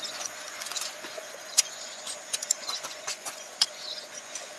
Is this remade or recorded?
remade